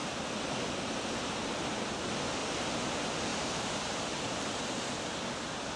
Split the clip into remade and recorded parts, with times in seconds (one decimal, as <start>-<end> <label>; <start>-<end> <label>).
0.0-2.4 recorded; 2.4-2.9 remade; 2.9-3.3 recorded; 3.3-4.6 remade; 4.6-5.8 recorded